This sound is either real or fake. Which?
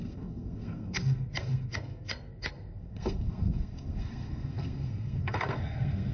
fake